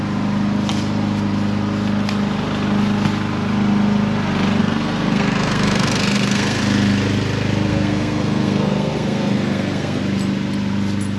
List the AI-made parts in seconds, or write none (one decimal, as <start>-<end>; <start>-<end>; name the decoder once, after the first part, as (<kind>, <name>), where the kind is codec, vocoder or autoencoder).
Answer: 4.6-6.6 (codec, SNAC); 7.7-10.0